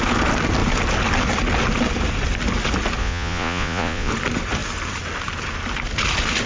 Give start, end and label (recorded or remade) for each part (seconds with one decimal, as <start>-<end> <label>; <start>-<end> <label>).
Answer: 0.0-3.0 recorded; 3.0-4.1 remade; 4.1-6.5 recorded